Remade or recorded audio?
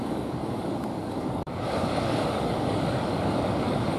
remade